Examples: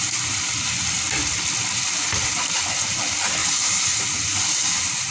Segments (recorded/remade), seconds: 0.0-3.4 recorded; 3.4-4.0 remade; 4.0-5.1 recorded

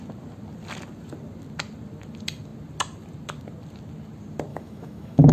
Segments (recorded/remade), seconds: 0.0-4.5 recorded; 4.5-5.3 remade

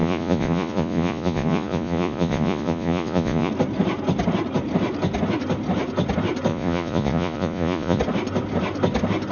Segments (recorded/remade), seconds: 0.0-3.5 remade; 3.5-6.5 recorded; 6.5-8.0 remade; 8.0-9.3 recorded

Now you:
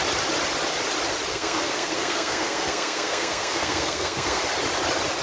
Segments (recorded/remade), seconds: 0.0-1.3 recorded; 1.3-4.4 remade; 4.4-5.2 recorded

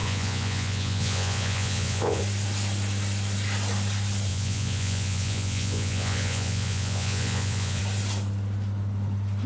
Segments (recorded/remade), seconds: 0.0-2.2 remade; 2.2-4.3 recorded; 4.3-7.8 remade; 7.8-9.5 recorded